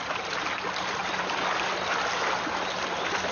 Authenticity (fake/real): real